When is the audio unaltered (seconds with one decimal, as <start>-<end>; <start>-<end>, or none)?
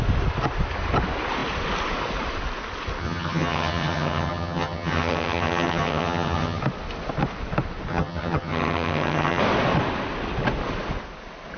0.0-3.0; 6.6-7.9; 9.4-11.6